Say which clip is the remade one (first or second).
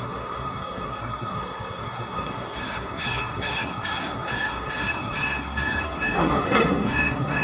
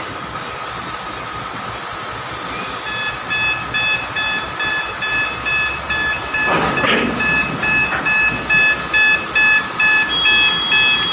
first